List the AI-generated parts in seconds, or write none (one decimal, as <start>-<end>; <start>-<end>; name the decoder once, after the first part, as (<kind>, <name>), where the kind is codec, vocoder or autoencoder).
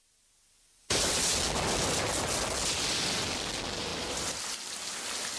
0.0-1.1 (vocoder, BigVGAN v2)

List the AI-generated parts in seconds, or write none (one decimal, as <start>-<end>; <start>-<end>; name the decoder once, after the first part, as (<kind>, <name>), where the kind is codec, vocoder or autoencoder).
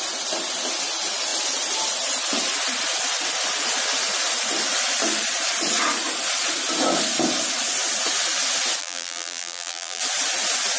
8.8-10.0 (vocoder, BigVGAN v2)